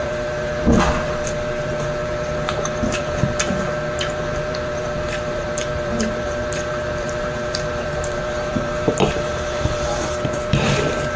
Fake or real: fake